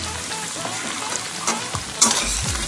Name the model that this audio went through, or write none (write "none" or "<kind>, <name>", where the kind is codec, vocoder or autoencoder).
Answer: none